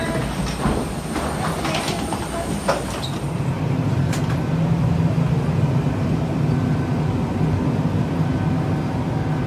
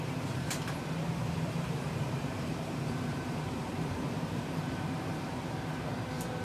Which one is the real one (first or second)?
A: first